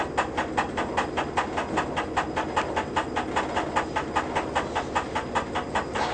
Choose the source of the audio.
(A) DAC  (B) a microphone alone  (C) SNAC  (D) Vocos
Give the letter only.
B